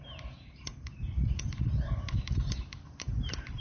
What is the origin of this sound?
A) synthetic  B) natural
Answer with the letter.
A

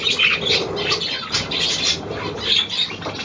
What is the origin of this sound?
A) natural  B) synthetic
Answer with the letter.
A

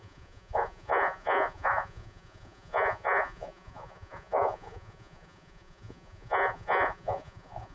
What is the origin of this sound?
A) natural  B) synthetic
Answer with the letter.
B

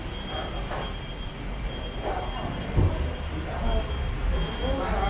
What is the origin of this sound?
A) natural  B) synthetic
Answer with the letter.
A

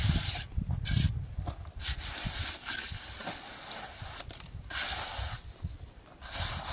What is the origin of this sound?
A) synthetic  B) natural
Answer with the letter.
B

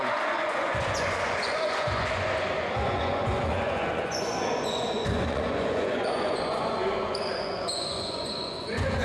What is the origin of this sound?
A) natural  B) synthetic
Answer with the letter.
B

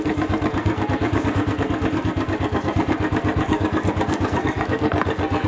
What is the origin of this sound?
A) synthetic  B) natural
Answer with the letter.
A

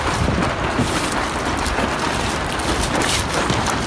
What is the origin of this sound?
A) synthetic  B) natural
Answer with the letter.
B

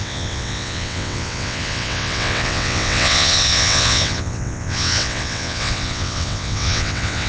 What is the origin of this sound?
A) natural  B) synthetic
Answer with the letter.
B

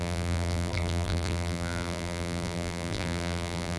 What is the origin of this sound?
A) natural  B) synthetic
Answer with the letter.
B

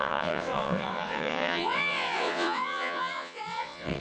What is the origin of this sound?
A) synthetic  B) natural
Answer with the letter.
A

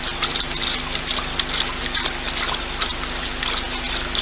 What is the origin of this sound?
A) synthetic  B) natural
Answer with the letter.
B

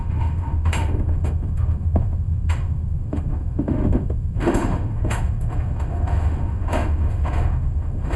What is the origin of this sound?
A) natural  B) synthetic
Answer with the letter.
B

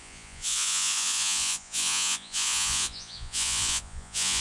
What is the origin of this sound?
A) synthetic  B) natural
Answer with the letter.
A